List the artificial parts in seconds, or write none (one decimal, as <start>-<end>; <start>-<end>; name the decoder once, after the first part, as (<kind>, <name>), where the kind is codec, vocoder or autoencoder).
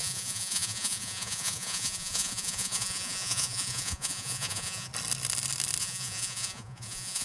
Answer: 0.0-4.9 (vocoder, Vocos); 5.8-7.2